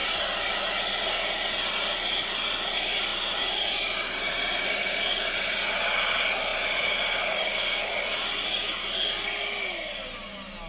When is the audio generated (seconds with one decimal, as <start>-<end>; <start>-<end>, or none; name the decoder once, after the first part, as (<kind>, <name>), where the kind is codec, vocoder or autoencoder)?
3.1-3.7 (vocoder, BigVGAN v2); 6.5-8.5